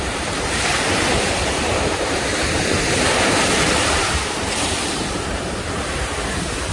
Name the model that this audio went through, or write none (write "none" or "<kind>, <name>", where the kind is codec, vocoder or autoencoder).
vocoder, BigVGAN v2